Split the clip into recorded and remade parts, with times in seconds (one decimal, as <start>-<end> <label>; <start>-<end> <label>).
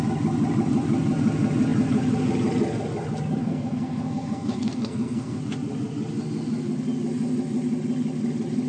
0.0-3.4 recorded; 3.4-5.4 remade; 5.4-8.7 recorded